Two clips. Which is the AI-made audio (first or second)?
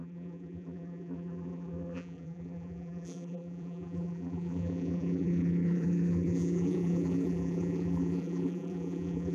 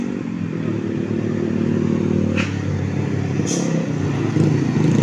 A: first